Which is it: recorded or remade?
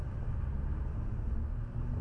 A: recorded